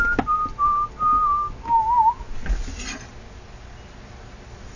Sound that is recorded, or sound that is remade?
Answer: recorded